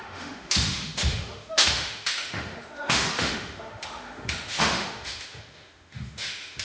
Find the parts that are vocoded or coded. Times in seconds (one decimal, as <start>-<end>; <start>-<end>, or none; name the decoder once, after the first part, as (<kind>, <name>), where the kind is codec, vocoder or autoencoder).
0.0-6.6 (autoencoder, DAC-VAE)